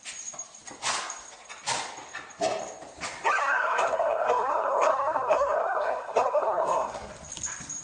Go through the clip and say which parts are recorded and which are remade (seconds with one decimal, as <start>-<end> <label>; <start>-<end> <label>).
0.0-3.4 recorded; 3.4-7.1 remade; 7.1-7.8 recorded